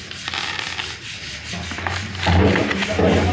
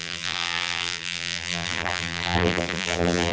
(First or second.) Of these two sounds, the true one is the first